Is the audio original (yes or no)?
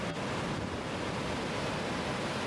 yes